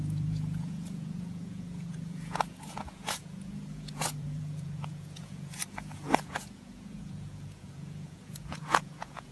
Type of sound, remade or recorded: remade